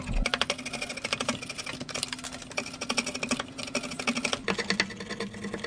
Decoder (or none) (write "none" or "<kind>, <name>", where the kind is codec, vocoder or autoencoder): none